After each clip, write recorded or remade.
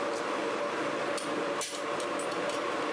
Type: remade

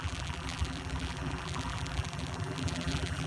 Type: remade